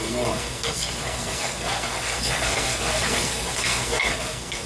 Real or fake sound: fake